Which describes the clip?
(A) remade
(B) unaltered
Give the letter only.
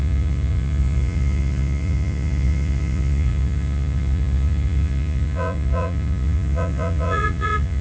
A